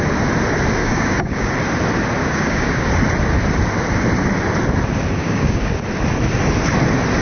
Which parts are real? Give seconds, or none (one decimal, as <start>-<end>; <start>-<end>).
0.0-0.8; 1.5-2.2; 2.9-5.2; 5.8-7.2